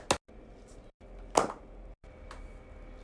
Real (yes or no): yes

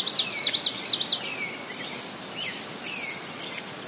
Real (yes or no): yes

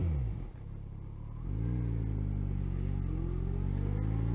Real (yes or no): yes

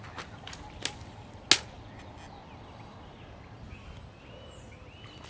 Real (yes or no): yes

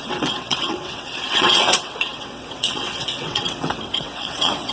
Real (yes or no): no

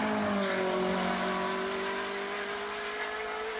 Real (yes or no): yes